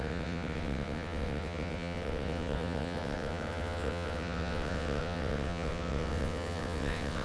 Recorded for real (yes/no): no